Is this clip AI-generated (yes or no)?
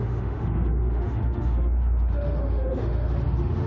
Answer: yes